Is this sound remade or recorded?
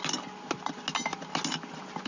recorded